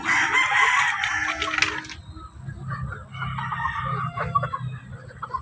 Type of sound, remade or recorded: recorded